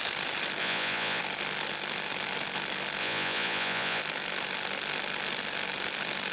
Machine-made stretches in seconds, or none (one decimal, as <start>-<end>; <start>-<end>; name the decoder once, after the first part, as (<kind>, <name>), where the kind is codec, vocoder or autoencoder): 0.6-1.2 (vocoder, Vocos); 3.0-4.0